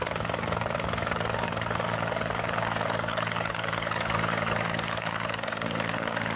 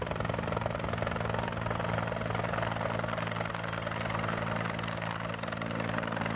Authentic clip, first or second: second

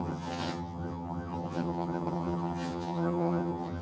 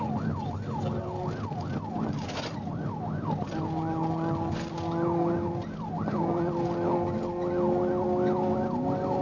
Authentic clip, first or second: second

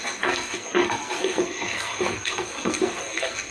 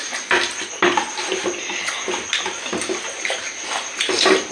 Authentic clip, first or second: second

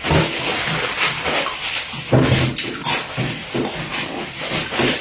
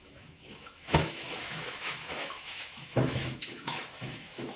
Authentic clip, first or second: first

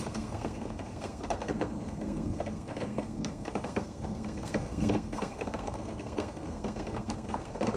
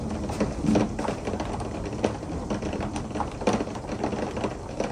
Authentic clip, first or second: second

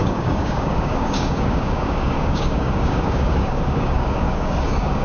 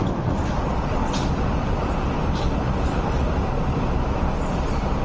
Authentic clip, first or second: second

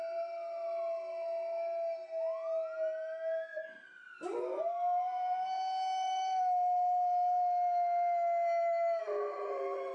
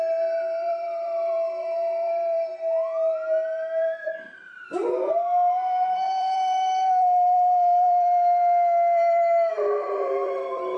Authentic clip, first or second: first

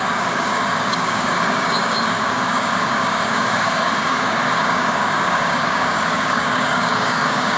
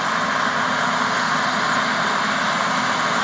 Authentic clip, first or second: second